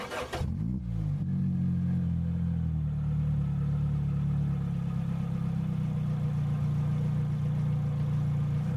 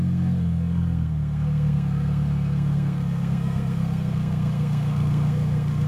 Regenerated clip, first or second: second